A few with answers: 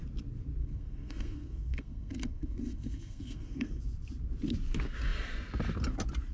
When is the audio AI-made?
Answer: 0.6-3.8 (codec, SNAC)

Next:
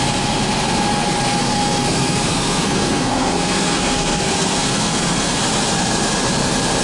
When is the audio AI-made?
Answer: 1.3-5.4 (codec, SNAC)

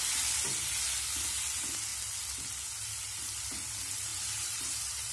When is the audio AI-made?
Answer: 4.1-5.1 (vocoder, BigVGAN v2)